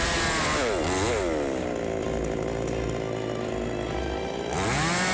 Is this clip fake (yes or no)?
no